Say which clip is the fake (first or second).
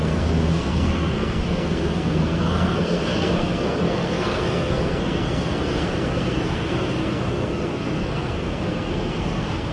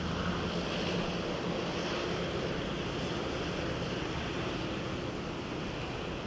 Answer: first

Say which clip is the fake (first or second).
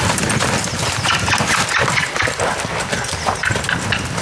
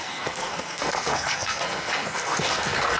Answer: second